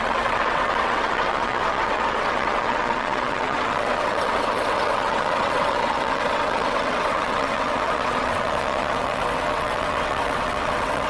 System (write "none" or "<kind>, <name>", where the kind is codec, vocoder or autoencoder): vocoder, WaveNeXt